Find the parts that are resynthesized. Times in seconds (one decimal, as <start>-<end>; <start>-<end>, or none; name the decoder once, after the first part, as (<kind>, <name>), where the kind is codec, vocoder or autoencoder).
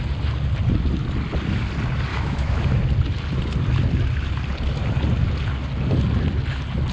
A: 2.1-2.7 (autoencoder, DAC-VAE)